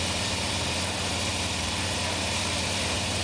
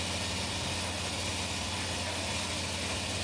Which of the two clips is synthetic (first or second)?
first